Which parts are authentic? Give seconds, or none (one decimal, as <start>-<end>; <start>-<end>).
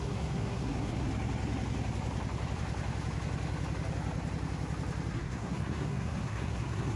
1.1-5.1